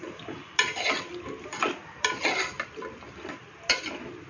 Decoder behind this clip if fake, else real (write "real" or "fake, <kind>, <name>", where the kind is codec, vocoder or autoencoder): real